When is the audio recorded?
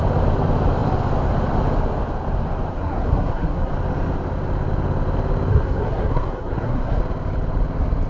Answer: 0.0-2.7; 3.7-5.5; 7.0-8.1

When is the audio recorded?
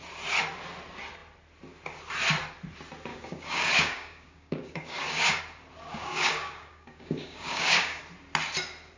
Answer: 0.0-3.1; 5.4-5.9; 8.0-9.0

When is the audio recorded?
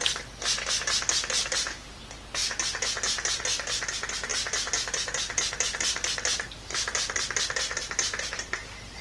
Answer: 0.0-9.0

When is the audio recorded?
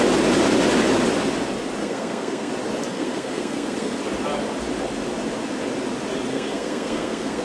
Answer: 0.0-1.8; 2.5-2.9; 4.0-6.3